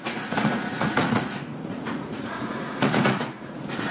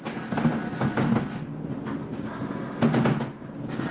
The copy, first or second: first